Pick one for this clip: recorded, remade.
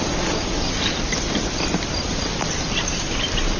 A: recorded